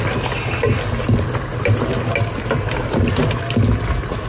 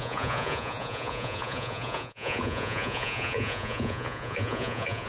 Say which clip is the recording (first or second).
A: first